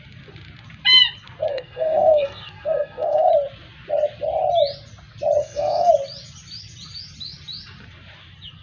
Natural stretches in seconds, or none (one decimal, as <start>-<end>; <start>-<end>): 0.0-1.5; 3.3-5.4; 5.9-8.6